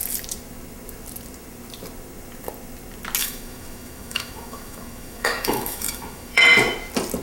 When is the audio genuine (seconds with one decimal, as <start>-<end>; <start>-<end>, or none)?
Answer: 0.0-3.2; 6.4-7.2